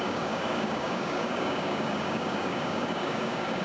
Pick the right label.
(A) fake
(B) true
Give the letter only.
A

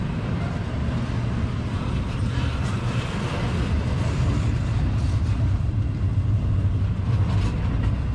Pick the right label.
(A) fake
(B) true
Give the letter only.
A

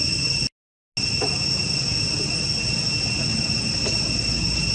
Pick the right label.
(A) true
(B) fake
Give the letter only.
A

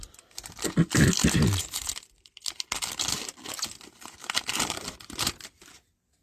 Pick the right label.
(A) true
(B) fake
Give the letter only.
A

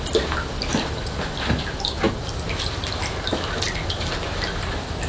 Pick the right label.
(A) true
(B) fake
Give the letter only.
A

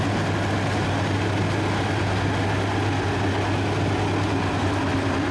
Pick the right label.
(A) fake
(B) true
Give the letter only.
B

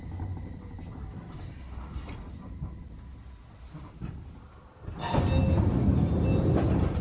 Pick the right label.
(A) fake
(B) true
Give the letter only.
B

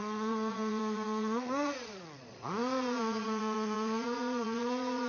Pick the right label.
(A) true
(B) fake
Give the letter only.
B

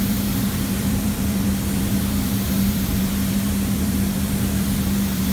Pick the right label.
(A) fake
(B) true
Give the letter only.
A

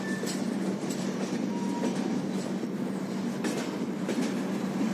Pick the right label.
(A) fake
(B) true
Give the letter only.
B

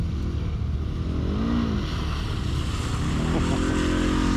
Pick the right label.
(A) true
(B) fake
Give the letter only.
A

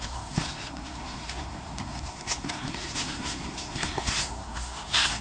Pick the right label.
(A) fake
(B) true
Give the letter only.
A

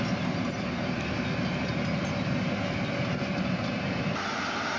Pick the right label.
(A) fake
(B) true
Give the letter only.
B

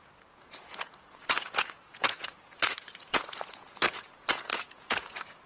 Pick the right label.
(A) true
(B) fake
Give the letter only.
B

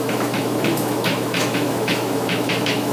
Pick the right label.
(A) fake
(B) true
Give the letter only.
A